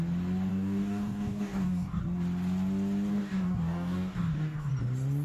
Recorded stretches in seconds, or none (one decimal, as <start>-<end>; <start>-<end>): 0.0-0.5; 2.0-3.1; 4.7-5.2